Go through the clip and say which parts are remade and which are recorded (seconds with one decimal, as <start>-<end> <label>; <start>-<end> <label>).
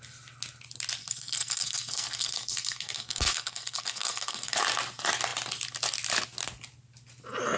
0.0-1.0 recorded; 1.0-4.6 remade; 4.6-7.6 recorded